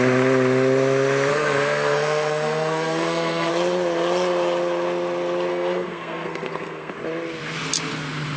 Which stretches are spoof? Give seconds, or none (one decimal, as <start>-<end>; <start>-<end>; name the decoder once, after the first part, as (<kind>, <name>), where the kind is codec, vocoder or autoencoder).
1.3-3.5 (codec, SNAC); 5.5-6.9